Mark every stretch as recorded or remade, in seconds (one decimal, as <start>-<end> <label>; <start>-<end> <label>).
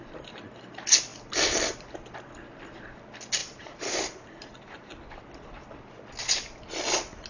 0.0-3.4 recorded; 3.4-4.9 remade; 4.9-7.3 recorded